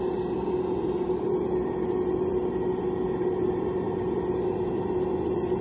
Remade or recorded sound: recorded